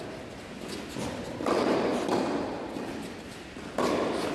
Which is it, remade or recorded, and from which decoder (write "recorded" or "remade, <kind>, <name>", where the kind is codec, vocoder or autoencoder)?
recorded